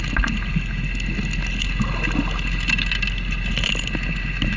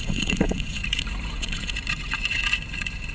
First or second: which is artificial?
second